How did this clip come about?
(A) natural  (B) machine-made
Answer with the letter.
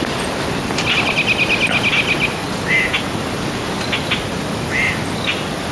A